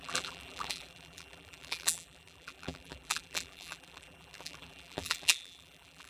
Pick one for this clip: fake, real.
fake